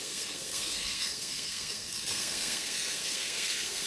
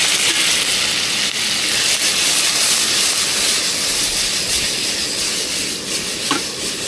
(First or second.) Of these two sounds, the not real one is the first